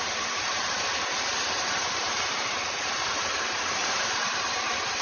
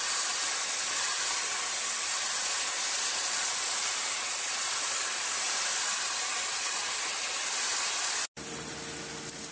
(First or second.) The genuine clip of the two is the second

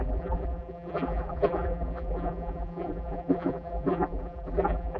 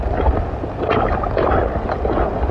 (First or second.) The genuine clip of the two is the second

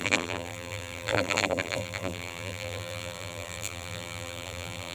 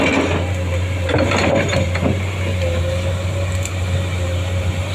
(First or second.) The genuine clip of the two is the second